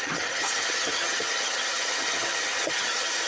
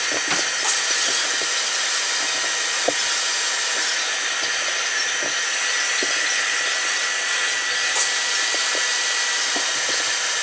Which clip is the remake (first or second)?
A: first